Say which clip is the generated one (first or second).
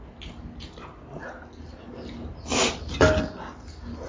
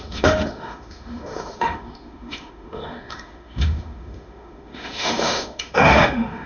second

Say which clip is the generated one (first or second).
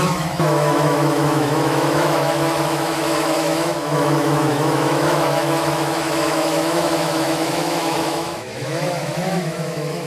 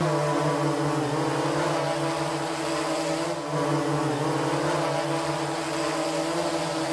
first